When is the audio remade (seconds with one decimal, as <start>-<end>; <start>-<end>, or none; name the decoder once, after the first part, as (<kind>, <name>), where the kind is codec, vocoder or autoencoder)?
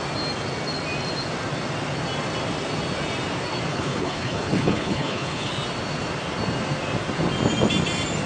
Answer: 3.7-5.5 (codec, HILCodec)